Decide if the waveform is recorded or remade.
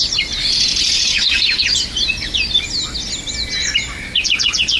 recorded